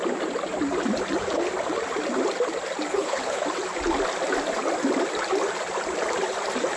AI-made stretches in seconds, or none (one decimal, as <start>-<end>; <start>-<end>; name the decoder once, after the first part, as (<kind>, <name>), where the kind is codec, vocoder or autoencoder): 2.9-3.4 (codec, HILCodec)